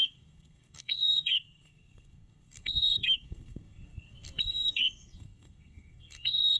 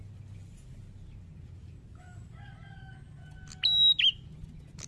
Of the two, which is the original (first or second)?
second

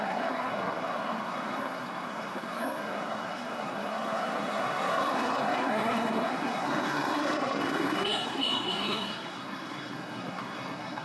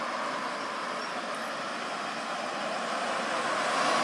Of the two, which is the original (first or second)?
second